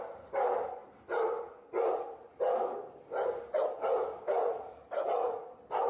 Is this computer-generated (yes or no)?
no